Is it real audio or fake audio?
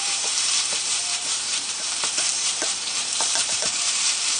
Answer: fake